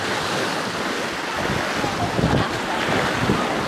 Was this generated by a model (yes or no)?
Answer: no